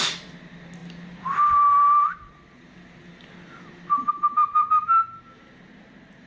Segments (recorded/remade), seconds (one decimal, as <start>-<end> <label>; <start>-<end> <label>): 0.0-6.3 recorded